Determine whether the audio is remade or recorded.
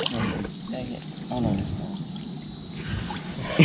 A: recorded